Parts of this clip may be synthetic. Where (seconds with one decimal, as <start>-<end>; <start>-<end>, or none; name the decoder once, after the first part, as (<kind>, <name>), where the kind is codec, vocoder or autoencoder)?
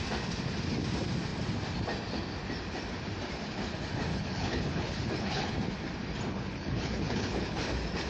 4.1-5.5 (codec, HILCodec); 6.3-7.6